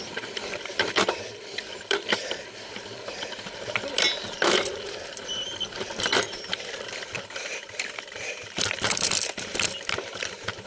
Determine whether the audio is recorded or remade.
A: remade